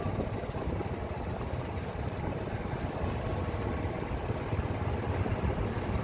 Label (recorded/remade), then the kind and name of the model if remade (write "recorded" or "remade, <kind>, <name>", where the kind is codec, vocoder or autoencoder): recorded